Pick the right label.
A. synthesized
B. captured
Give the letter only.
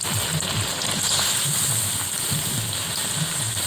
B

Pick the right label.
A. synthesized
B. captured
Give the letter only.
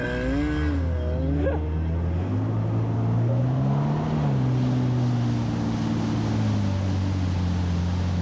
B